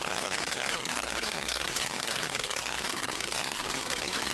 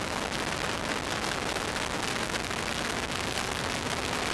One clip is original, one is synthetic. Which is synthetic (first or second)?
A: first